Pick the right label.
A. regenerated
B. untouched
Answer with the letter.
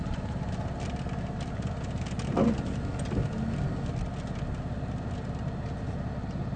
B